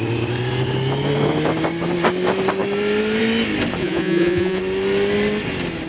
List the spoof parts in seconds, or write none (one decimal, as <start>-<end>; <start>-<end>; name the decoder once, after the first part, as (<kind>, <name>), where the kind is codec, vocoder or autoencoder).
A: 3.8-4.6 (vocoder, Vocos)